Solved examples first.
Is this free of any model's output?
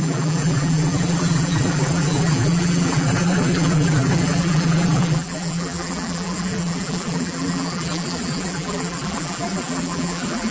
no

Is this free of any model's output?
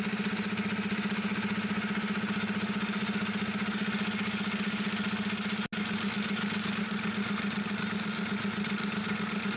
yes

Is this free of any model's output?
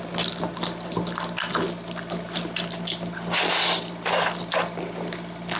yes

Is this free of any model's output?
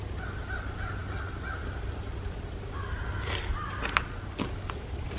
yes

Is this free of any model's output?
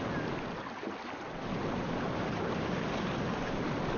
yes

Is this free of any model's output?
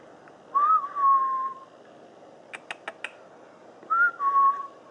yes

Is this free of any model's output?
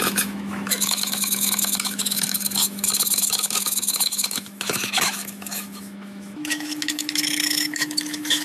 no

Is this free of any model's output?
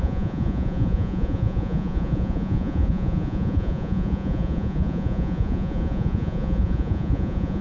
no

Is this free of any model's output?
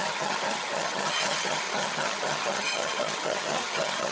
no